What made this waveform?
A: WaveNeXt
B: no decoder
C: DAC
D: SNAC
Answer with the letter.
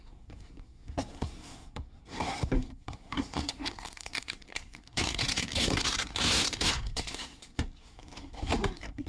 D